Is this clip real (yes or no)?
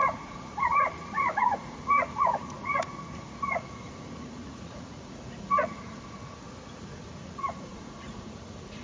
no